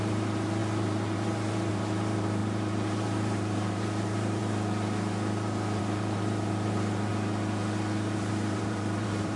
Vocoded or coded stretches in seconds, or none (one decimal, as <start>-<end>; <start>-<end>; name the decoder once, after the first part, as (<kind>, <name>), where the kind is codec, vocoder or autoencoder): 0.0-4.4 (vocoder, BigVGAN v2); 5.8-7.1; 8.3-9.4